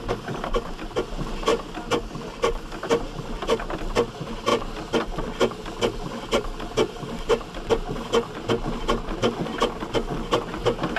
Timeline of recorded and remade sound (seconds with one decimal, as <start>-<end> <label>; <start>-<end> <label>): 0.0-4.5 recorded; 4.5-5.4 remade; 5.4-11.0 recorded